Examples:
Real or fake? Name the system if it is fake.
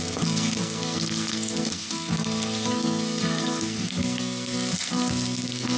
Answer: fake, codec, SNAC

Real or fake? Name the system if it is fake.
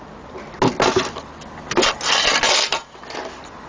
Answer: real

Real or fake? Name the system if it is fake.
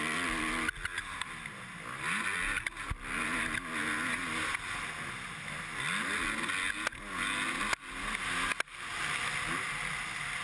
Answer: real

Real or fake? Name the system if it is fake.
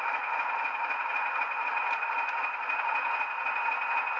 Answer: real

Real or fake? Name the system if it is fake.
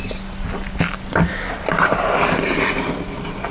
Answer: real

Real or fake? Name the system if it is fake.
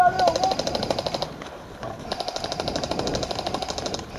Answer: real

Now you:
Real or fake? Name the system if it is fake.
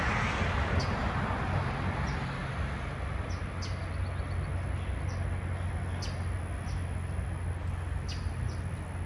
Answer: real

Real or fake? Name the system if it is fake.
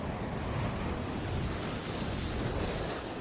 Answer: real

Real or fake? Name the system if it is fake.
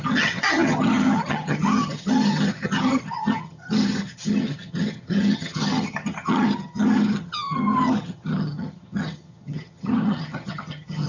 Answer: fake, vocoder, HiFi-GAN